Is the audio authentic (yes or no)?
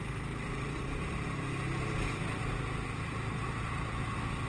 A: yes